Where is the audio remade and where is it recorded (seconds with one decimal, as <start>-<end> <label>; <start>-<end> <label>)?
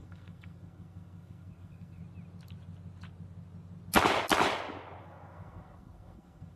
0.0-2.0 remade; 2.0-5.0 recorded; 5.0-6.6 remade